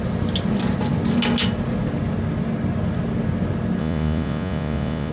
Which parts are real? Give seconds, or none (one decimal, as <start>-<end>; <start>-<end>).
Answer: 0.0-3.8